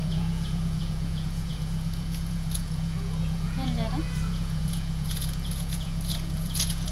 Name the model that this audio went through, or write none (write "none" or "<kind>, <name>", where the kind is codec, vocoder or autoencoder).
vocoder, Vocos